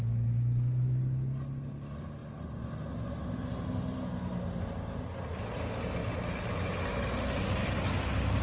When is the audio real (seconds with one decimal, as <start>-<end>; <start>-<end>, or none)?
0.0-8.4